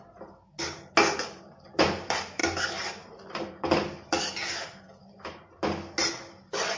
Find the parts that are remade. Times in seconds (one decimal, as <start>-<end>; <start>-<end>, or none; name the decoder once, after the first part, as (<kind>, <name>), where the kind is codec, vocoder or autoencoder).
none